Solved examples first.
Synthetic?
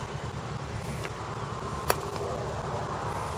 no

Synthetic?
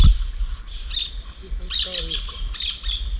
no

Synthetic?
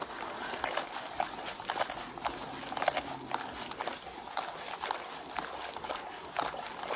no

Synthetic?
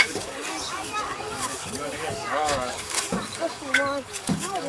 yes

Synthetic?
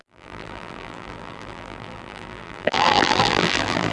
yes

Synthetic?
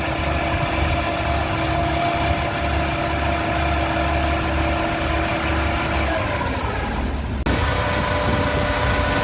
no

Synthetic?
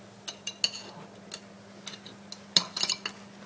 no